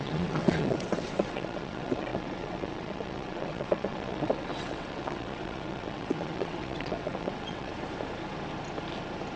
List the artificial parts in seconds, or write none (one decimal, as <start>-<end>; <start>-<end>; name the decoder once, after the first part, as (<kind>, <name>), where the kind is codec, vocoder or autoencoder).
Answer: 0.0-7.7 (vocoder, WaveNeXt)